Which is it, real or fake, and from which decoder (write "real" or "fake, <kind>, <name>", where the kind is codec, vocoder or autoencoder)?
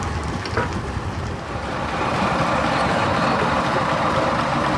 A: real